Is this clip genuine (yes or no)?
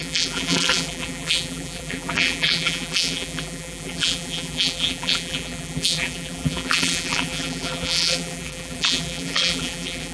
no